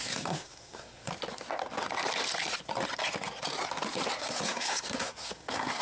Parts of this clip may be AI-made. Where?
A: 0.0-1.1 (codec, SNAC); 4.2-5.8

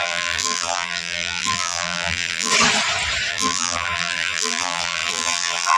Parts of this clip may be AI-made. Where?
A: 0.0-2.5 (vocoder, BigVGAN v2); 3.3-5.8

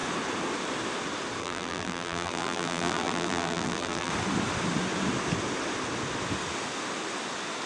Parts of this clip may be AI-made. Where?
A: 1.4-4.1 (vocoder, BigVGAN v2)

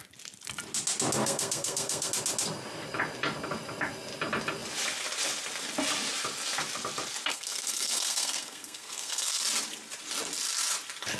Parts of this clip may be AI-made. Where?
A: 1.2-2.1 (codec, SNAC); 7.3-9.4

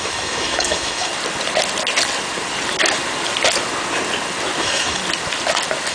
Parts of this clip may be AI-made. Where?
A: 0.0-1.1 (autoencoder, DAC-VAE); 4.6-5.0

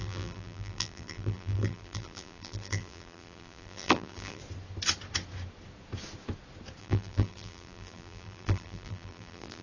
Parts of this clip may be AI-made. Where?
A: 0.0-4.4 (vocoder, BigVGAN v2); 6.8-9.6

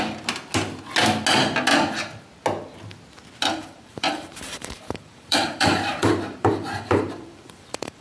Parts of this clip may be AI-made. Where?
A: 3.5-8.0 (vocoder, BigVGAN v2)

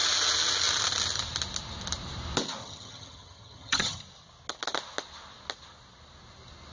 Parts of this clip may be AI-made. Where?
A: 2.6-4.0 (vocoder, HiFi-GAN)